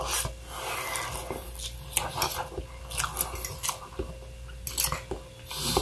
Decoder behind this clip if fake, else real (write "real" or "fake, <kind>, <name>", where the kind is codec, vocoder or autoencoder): real